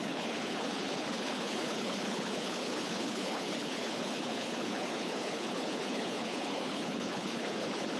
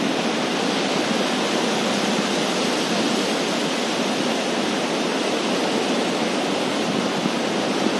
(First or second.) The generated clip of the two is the first